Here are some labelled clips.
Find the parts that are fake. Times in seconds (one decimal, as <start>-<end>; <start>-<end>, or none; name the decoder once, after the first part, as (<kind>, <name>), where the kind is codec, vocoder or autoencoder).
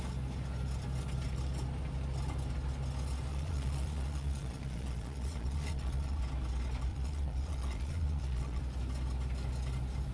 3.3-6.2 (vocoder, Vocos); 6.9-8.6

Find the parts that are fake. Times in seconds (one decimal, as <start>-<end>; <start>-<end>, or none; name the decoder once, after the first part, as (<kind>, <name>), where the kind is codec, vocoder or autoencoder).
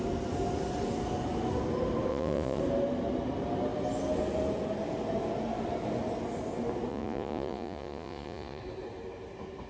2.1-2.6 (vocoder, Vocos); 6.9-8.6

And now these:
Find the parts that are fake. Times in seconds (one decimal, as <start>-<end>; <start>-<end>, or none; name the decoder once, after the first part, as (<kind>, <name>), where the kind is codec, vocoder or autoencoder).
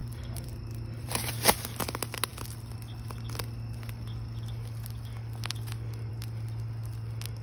0.0-1.3 (vocoder, BigVGAN v2)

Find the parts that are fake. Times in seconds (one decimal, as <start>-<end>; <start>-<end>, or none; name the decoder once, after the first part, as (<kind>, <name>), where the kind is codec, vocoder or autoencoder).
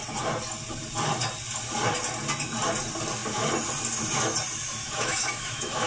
4.8-5.9 (autoencoder, DAC-VAE)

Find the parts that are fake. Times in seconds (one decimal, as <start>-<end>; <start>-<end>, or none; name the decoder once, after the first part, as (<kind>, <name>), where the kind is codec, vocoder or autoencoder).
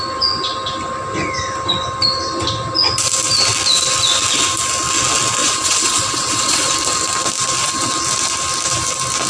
5.4-6.7 (vocoder, WaveNeXt)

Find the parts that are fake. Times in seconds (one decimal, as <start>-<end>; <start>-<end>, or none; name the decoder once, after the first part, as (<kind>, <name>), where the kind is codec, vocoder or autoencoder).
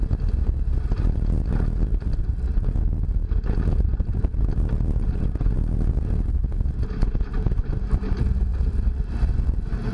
none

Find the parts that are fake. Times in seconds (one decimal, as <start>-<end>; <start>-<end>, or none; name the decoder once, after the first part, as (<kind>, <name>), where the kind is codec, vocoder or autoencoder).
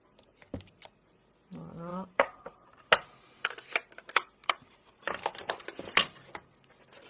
1.9-2.8 (vocoder, BigVGAN v2); 4.4-5.1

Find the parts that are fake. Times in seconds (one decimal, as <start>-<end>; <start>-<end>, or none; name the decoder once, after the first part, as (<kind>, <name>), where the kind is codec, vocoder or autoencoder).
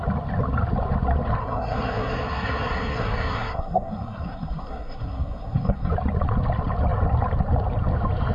1.4-5.9 (codec, SNAC)